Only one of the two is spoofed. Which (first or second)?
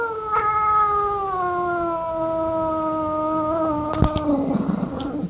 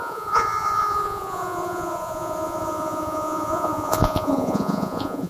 second